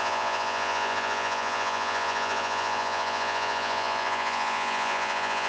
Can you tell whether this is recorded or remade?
remade